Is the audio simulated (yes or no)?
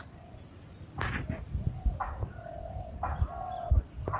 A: no